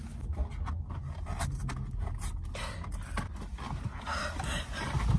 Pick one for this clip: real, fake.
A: real